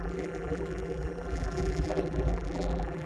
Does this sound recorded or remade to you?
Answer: remade